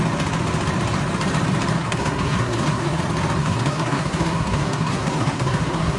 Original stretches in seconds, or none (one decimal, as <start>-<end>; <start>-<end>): 0.0-1.8; 3.0-3.4